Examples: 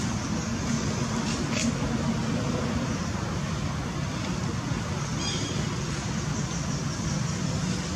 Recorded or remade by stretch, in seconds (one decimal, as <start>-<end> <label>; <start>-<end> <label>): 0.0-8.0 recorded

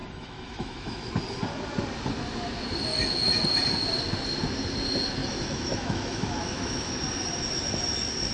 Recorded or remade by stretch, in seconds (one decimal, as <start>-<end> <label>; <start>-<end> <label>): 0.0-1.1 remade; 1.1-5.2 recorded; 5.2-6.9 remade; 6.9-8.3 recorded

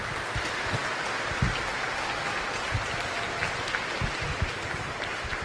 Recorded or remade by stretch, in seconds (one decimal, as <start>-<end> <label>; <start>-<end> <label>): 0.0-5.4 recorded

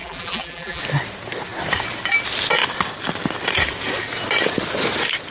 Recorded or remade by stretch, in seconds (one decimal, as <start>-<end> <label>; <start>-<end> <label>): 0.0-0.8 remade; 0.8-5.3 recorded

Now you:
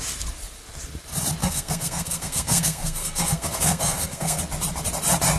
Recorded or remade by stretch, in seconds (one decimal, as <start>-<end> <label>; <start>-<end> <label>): 0.0-1.4 recorded; 1.4-4.4 remade; 4.4-5.4 recorded

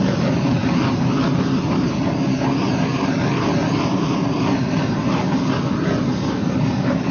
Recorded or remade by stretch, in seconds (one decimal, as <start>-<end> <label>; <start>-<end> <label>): 0.0-7.1 recorded

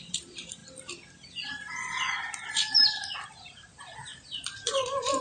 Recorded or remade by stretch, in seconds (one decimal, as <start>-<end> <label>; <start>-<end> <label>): 0.0-0.6 remade; 0.6-2.5 recorded; 2.5-5.2 remade

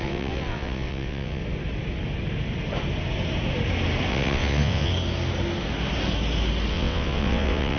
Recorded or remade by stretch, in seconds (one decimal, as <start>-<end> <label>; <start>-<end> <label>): 0.0-1.4 remade; 1.4-4.1 recorded; 4.1-4.9 remade; 4.9-6.7 recorded; 6.7-7.8 remade